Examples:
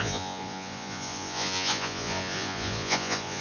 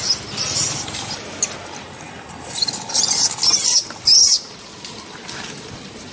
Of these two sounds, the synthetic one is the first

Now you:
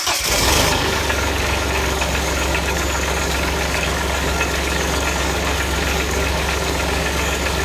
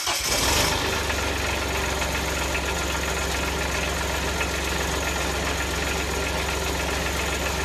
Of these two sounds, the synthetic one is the first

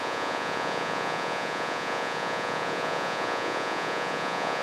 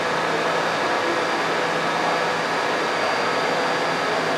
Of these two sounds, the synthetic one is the first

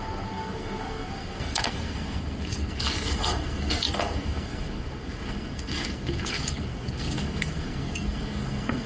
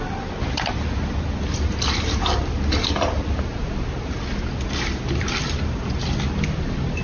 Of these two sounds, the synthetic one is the first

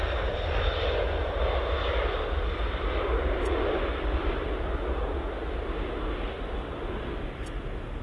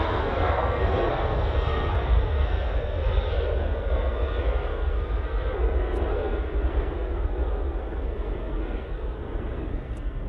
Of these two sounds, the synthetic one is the second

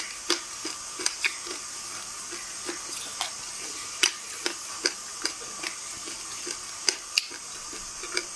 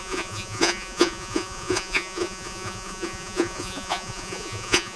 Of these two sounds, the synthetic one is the second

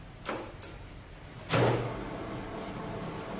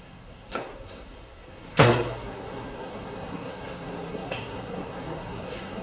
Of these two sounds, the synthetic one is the second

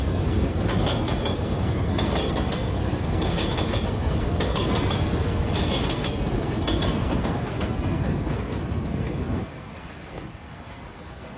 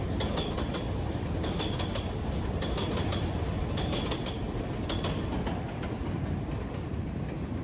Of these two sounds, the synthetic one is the first